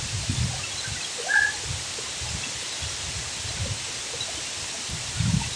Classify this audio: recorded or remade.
recorded